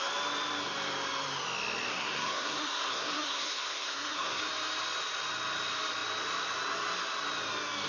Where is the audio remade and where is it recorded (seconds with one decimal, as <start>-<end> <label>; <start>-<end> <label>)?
0.0-1.9 recorded; 1.9-4.4 remade; 4.4-7.9 recorded

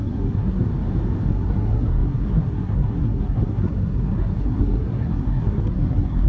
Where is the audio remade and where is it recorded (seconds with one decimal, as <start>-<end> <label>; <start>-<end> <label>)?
0.0-0.7 remade; 0.7-1.3 recorded; 1.3-6.3 remade